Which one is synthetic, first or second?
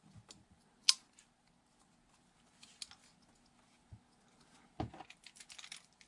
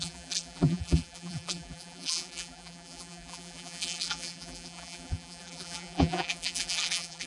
second